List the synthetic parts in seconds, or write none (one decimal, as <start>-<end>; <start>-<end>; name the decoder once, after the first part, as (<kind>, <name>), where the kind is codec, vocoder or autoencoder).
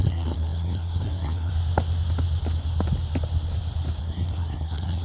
0.0-1.5 (codec, SNAC); 4.0-5.0